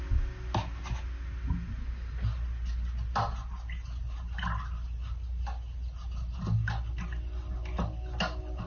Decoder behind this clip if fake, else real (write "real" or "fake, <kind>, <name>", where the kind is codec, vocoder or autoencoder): real